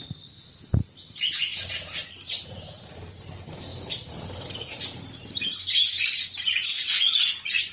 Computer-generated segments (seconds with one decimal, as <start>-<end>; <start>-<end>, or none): 3.7-5.6